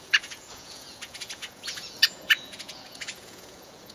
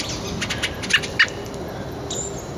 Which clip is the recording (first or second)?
second